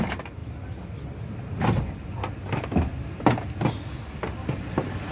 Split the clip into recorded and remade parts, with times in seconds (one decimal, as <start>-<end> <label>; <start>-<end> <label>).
0.0-5.1 recorded